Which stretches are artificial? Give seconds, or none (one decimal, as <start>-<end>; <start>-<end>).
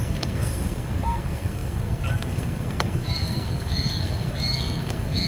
0.0-5.3